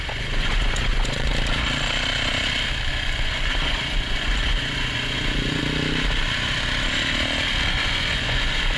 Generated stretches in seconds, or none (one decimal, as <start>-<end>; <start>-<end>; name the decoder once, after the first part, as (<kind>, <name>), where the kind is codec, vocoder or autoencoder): 0.0-1.3 (vocoder, Vocos); 2.9-5.6; 7.7-8.8